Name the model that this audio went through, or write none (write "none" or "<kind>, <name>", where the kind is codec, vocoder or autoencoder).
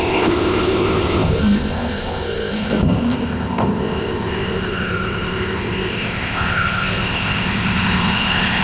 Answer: codec, ZipCodec